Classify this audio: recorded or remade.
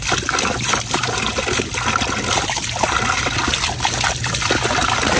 recorded